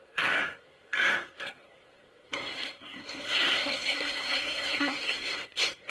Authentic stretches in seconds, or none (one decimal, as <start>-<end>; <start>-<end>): none